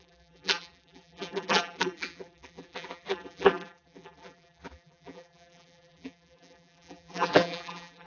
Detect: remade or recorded remade